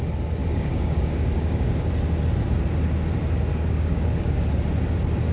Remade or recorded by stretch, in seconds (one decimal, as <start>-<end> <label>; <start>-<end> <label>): 0.0-0.4 recorded; 0.4-1.9 remade; 1.9-3.5 recorded; 3.5-4.5 remade; 4.5-5.3 recorded